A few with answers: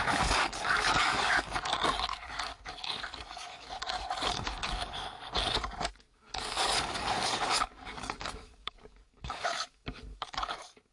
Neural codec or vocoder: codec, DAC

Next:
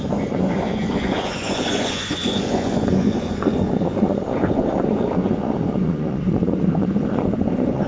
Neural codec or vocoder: vocoder, Vocos